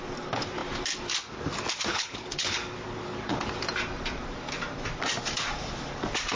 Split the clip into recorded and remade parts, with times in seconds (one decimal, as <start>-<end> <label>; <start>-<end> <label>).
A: 0.0-1.9 recorded; 1.9-2.6 remade; 2.6-6.4 recorded